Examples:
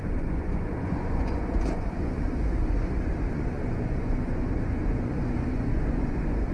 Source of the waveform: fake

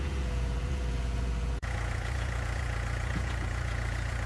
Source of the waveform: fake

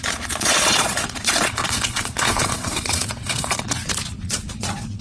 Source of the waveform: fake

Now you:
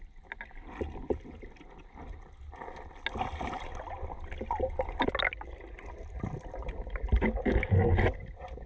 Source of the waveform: real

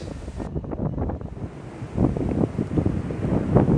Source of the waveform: real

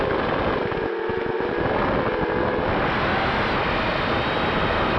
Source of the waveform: real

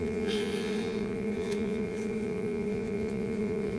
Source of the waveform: fake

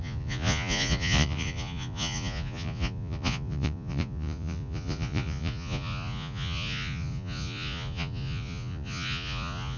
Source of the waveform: fake